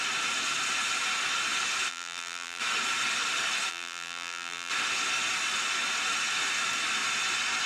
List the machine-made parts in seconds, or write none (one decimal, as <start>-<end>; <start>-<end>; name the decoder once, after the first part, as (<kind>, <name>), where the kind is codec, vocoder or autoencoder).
1.9-2.6 (vocoder, BigVGAN v2); 3.7-4.7

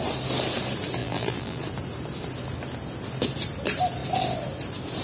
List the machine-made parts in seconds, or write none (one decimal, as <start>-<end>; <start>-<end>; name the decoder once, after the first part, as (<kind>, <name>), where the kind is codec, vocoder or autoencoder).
1.0-1.6 (vocoder, BigVGAN v2)